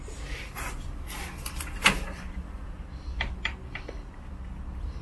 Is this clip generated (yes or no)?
no